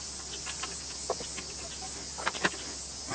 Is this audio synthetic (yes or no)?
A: no